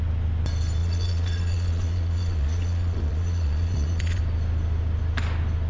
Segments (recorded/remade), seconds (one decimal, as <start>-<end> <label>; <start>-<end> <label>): 0.0-0.8 recorded; 0.8-4.2 remade; 4.2-5.7 recorded